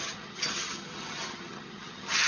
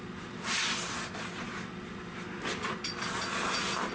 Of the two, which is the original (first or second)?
second